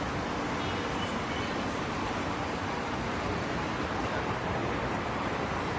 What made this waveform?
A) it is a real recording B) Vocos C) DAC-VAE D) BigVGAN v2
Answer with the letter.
A